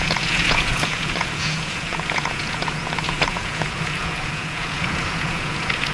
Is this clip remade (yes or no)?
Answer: yes